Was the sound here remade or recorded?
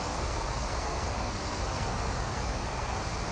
remade